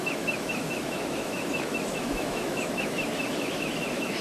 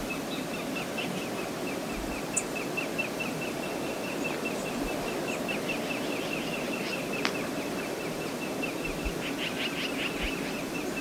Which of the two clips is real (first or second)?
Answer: second